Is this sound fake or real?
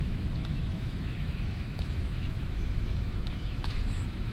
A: fake